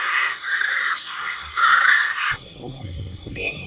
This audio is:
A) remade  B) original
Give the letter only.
A